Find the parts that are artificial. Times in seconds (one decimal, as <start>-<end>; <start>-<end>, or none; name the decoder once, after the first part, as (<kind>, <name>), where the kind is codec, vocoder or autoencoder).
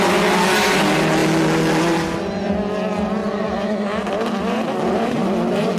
none